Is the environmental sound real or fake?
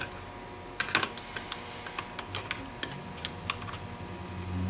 real